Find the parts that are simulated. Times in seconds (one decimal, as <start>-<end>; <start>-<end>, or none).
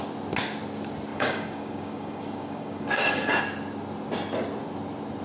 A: 1.1-3.4